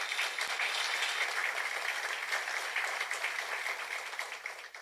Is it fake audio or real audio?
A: real